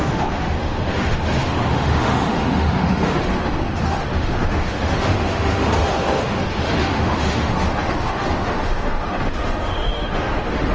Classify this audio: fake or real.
fake